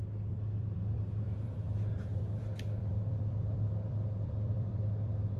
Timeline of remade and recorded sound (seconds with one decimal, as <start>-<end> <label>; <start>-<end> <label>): 0.0-5.4 remade